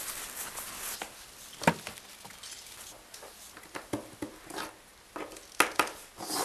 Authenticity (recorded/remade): recorded